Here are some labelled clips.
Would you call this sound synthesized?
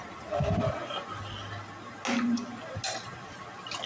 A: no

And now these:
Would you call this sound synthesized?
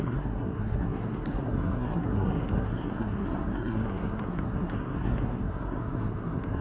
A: yes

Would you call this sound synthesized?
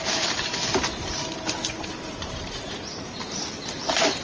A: no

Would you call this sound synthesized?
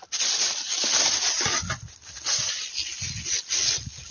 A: no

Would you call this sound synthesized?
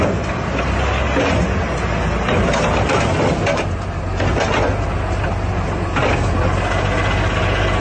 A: no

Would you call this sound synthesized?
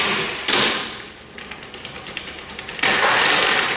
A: no